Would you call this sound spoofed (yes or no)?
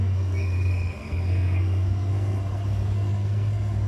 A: yes